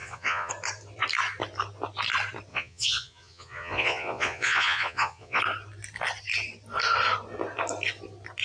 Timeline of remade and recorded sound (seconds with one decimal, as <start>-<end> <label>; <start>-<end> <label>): 0.0-0.5 remade; 0.5-2.5 recorded; 2.5-5.4 remade; 5.4-8.4 recorded